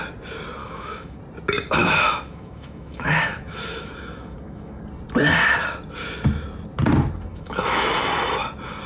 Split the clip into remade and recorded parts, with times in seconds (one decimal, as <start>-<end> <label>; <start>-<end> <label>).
0.0-0.6 recorded; 0.6-1.2 remade; 1.2-1.8 recorded; 1.8-4.8 remade; 4.8-7.3 recorded; 7.3-8.1 remade; 8.1-8.9 recorded